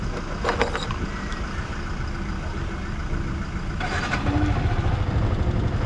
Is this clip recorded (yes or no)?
yes